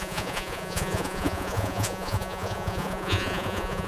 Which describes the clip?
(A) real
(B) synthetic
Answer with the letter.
B